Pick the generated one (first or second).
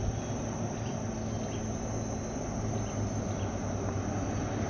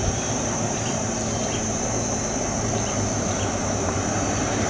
second